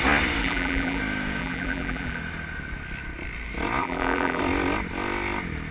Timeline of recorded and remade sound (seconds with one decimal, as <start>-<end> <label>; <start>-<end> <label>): 0.0-0.4 recorded; 0.4-1.0 remade; 1.0-1.4 recorded; 1.4-2.2 remade; 2.2-3.8 recorded; 3.8-4.4 remade; 4.4-5.7 recorded